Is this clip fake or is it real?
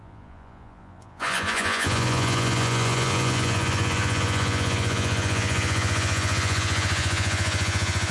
fake